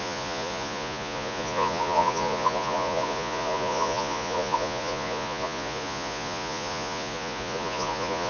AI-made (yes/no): yes